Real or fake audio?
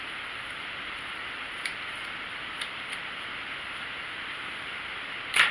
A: fake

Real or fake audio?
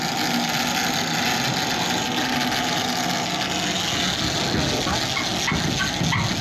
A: real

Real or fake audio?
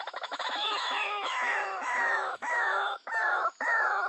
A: fake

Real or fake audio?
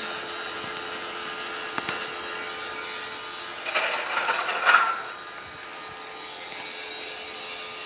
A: real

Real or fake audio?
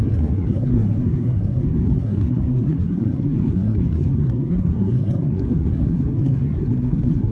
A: fake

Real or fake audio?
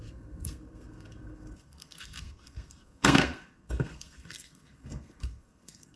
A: fake